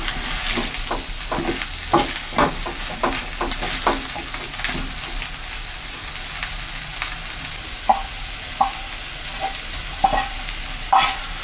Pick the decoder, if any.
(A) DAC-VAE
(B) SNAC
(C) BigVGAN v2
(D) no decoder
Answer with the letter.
D